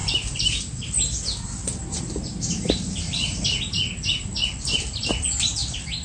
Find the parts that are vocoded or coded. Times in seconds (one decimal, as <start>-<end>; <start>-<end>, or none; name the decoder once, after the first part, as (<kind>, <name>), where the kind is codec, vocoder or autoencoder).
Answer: 0.0-0.6 (vocoder, BigVGAN v2); 1.6-3.6